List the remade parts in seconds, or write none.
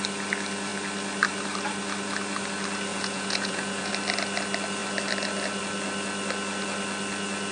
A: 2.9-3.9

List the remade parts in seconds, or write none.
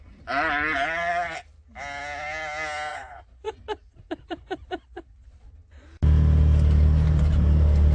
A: 2.9-5.5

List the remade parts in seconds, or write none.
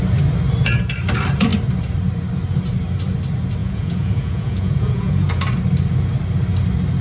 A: 3.6-5.4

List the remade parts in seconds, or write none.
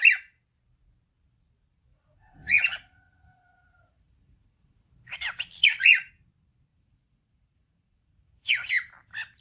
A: 1.9-4.9; 5.6-6.1; 6.7-8.7